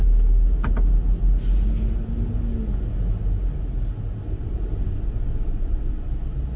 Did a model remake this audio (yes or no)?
no